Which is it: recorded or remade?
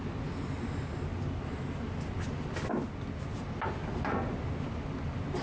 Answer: recorded